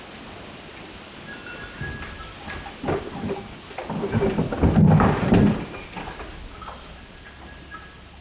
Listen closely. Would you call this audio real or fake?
real